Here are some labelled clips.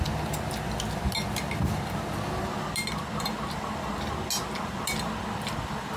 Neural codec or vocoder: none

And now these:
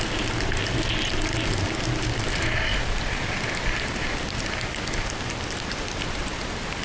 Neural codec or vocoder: none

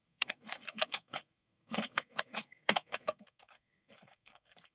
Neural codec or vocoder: codec, SNAC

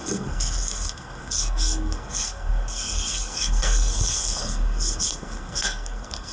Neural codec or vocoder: codec, SNAC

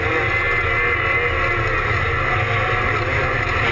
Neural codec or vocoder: none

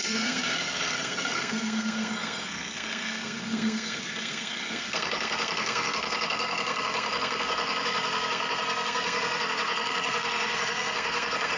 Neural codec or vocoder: codec, SNAC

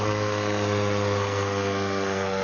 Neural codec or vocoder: codec, SNAC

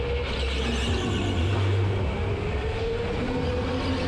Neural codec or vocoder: none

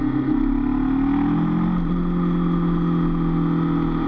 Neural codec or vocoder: none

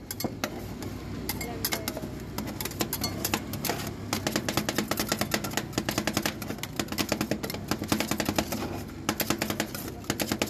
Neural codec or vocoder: none